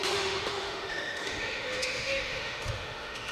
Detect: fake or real fake